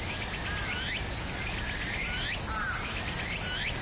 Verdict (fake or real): real